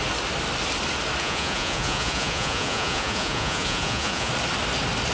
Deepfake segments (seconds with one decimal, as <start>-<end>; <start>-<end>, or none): 1.2-4.3